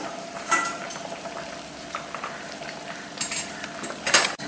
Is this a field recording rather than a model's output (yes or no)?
yes